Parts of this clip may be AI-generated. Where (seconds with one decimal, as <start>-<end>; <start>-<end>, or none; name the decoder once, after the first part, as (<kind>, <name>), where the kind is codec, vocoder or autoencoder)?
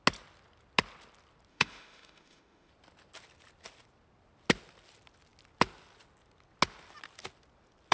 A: 1.5-2.7 (autoencoder, DAC-VAE)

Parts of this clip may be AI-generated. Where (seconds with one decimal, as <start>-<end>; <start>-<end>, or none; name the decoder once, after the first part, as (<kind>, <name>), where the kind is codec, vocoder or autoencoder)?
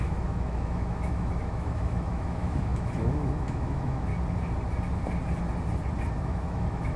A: 0.0-4.1 (autoencoder, DAC-VAE); 6.2-7.0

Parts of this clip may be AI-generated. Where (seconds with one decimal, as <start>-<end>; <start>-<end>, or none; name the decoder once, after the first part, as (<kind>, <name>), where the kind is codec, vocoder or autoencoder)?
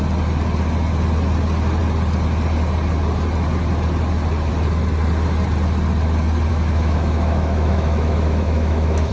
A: 6.5-9.1 (autoencoder, DAC-VAE)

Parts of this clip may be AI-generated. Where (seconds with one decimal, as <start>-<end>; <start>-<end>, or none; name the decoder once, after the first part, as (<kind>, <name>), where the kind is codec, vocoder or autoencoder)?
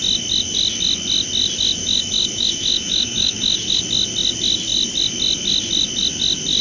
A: 1.8-3.8 (autoencoder, DAC-VAE)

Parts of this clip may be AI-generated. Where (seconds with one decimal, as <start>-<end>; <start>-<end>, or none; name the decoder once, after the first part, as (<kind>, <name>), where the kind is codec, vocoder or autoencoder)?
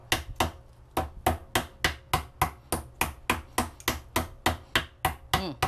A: none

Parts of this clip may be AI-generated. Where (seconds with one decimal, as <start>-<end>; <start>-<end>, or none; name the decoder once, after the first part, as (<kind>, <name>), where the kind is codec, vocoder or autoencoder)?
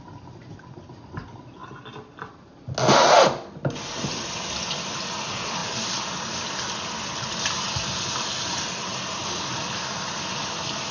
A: none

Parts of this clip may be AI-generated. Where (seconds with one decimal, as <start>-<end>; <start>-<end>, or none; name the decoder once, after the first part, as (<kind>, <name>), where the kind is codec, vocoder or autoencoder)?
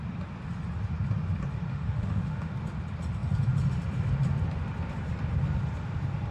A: 1.7-2.5 (autoencoder, DAC-VAE)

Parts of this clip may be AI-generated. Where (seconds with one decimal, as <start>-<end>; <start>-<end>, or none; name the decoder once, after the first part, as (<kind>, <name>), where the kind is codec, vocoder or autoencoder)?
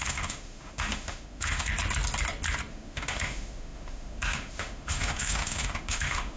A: 0.0-1.7 (autoencoder, DAC-VAE); 2.7-6.4